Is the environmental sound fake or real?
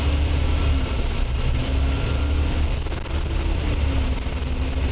real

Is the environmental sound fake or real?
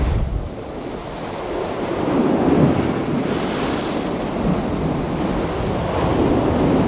real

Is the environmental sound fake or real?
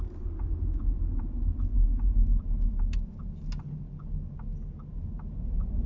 real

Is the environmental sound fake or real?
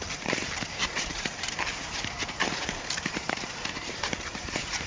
fake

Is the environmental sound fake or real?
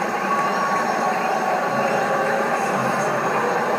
fake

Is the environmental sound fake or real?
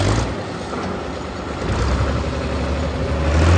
real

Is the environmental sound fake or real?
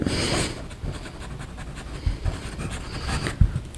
real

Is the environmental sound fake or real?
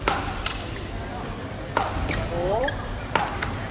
fake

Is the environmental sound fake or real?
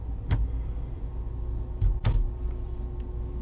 fake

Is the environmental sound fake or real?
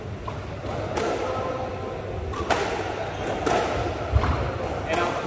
real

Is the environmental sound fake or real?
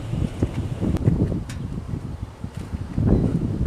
fake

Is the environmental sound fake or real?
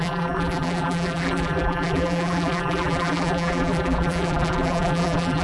fake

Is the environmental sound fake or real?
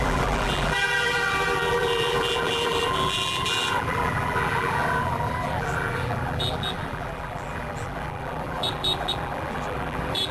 fake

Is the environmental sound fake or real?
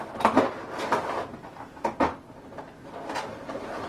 real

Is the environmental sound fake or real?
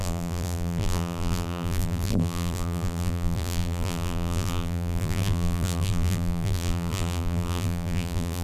fake